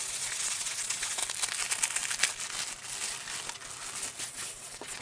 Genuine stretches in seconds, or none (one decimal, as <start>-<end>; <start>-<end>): 1.2-4.2